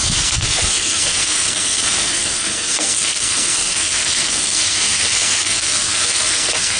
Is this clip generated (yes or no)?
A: yes